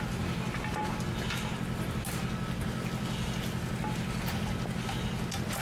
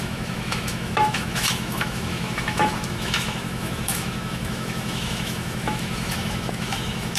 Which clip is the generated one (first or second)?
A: second